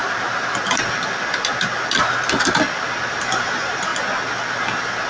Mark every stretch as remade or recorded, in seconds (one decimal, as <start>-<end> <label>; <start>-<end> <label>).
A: 0.0-3.1 recorded; 3.1-3.9 remade; 3.9-5.1 recorded